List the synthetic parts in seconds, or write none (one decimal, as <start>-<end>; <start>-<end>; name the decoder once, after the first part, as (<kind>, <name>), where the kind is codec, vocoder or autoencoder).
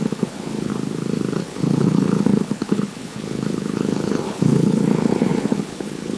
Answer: 0.0-0.7 (codec, HILCodec); 1.4-6.2